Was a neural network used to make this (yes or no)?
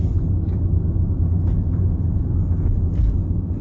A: no